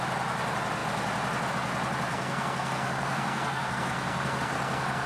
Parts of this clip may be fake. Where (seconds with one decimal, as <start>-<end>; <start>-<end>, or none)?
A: 2.1-5.1